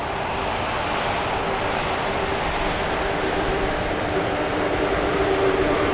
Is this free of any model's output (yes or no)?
yes